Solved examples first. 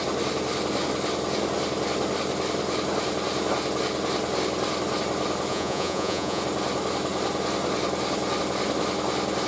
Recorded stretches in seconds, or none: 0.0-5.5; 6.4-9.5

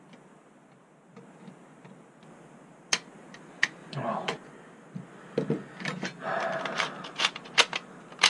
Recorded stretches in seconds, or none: 0.0-3.8; 4.7-8.3

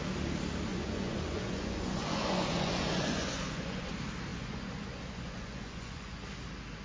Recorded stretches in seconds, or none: 0.0-0.7; 3.9-4.3; 6.2-6.8

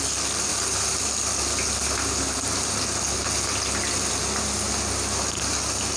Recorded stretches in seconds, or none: 0.0-6.0

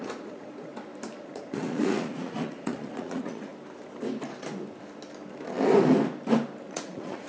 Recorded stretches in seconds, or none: 0.7-1.2; 3.5-6.7